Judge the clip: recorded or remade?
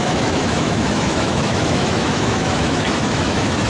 remade